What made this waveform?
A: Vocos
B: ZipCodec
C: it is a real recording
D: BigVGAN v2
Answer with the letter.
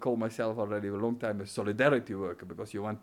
C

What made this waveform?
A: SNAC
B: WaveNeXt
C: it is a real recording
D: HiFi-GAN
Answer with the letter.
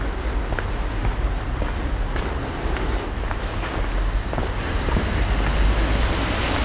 C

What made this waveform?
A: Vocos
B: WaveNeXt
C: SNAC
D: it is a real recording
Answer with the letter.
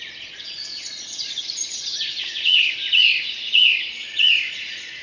A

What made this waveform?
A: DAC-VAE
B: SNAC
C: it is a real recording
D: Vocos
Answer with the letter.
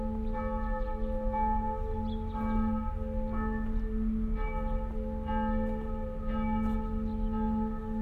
C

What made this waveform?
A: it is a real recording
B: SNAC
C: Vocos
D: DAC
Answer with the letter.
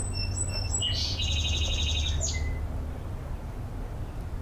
A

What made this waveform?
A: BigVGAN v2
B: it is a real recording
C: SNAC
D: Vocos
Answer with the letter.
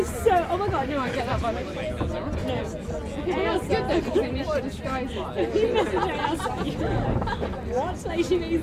B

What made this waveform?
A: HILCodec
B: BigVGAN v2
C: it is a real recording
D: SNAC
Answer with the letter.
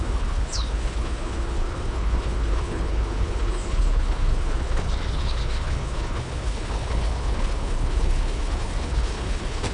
A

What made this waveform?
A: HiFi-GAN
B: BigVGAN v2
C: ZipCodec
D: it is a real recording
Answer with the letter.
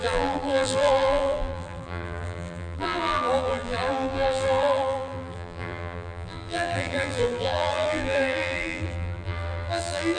B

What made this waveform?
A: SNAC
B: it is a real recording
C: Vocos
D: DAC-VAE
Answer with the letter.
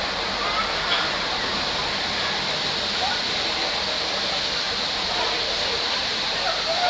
B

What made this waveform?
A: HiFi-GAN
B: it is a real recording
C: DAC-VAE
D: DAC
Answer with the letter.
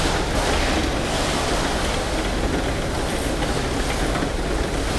B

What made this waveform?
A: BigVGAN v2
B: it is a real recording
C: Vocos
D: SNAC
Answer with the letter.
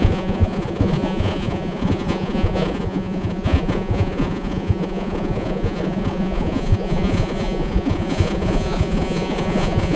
C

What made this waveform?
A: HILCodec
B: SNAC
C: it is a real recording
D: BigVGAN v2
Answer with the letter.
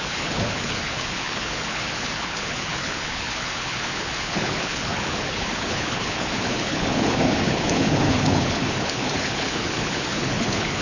A